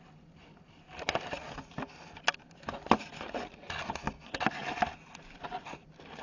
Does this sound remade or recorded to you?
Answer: recorded